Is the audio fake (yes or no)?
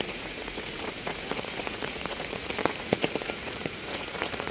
yes